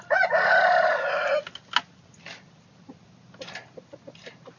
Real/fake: real